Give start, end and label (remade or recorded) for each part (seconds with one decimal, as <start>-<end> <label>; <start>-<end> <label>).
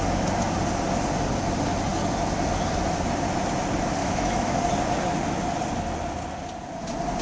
0.0-4.0 recorded; 4.0-4.6 remade; 4.6-7.2 recorded